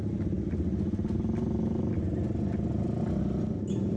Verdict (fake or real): real